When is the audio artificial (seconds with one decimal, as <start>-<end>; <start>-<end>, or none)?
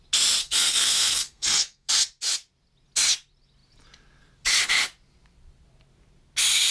0.4-1.9